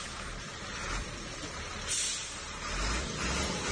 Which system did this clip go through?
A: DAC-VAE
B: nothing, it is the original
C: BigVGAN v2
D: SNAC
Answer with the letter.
C